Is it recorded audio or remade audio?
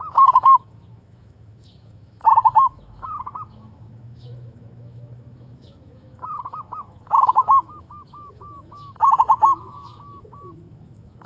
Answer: remade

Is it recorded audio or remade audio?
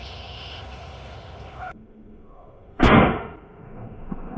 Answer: remade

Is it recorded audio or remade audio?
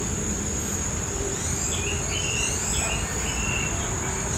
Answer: recorded